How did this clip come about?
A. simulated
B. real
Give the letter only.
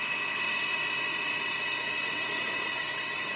A